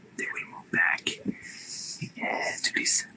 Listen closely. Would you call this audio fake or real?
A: fake